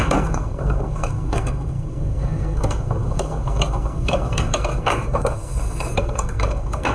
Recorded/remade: remade